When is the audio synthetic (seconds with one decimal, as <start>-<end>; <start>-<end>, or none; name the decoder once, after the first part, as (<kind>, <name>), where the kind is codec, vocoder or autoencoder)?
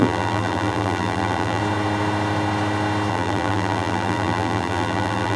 0.0-1.6 (vocoder, BigVGAN v2); 3.1-5.4